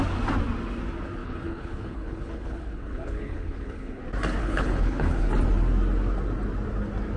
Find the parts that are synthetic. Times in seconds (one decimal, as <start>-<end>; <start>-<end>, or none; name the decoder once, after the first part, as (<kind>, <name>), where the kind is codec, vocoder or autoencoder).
1.2-4.0 (codec, HILCodec); 4.4-5.3